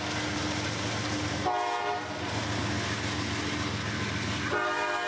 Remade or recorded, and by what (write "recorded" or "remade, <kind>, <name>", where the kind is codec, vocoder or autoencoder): recorded